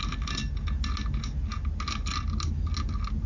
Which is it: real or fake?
real